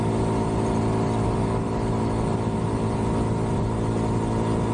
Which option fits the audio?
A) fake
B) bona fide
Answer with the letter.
B